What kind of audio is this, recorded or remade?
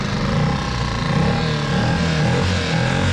recorded